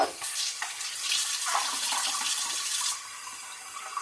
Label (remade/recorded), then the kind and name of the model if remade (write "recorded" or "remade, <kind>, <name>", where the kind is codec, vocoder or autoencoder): recorded